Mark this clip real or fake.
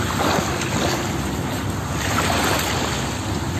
real